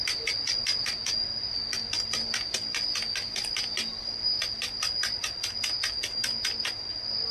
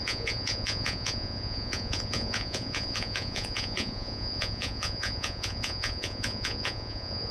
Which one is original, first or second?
first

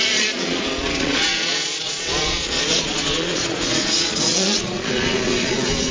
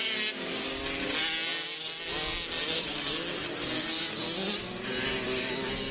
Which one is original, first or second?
second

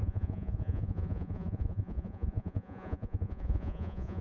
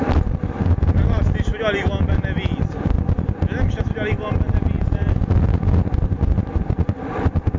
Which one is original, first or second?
second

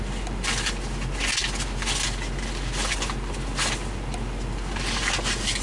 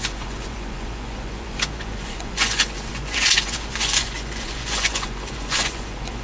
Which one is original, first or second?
first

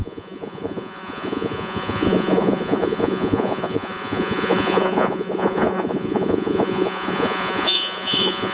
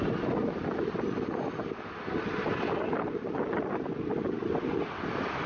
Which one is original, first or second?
second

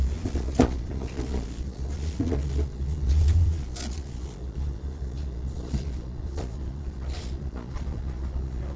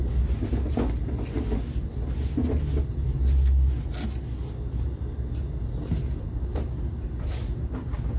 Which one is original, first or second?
second